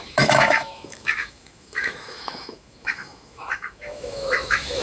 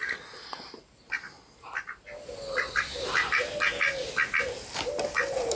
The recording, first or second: second